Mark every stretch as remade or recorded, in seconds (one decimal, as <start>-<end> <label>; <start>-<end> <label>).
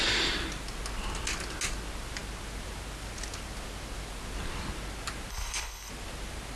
0.0-5.3 recorded; 5.3-5.9 remade; 5.9-6.6 recorded